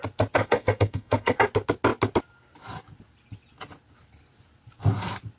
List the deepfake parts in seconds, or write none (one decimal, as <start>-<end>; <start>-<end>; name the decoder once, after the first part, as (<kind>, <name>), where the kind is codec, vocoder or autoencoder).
0.4-1.4 (codec, SNAC)